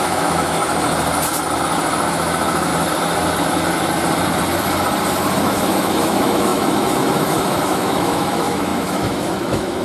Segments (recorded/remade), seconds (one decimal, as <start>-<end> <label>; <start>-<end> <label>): 0.0-0.6 remade; 0.6-2.1 recorded; 2.1-2.7 remade; 2.7-5.4 recorded; 5.4-9.8 remade

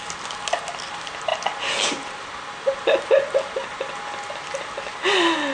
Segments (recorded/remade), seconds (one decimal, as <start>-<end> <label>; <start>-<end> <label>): 0.0-5.5 recorded

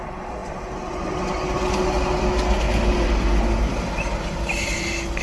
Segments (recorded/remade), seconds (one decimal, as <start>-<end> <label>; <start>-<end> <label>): 0.0-5.2 recorded

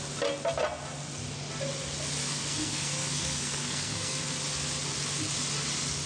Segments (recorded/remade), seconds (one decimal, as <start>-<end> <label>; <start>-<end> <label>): 0.0-2.2 recorded; 2.2-4.2 remade; 4.2-6.1 recorded